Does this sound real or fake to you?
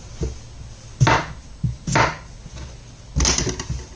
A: real